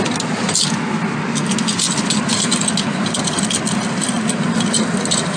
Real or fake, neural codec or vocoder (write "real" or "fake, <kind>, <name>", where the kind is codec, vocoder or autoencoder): real